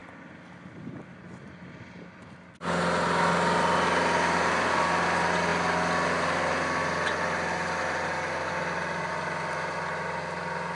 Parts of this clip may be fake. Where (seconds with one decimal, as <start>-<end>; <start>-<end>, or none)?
none

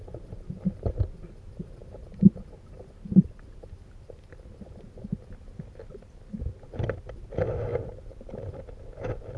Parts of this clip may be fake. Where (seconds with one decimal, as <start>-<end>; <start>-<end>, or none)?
none

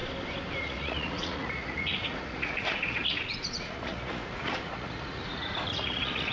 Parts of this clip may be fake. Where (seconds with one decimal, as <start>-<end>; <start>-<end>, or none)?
0.6-6.3

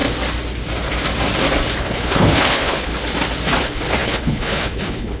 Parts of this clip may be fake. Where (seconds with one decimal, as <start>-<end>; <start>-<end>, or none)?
1.8-2.9; 3.6-5.2

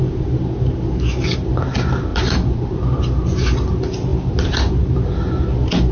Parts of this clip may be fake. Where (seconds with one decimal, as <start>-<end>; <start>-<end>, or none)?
2.1-2.7

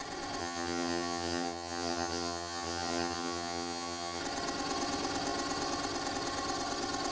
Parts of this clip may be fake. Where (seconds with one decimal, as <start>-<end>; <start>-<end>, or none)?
0.4-4.2